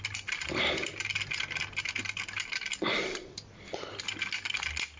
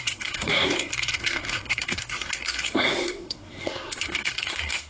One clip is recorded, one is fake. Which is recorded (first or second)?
first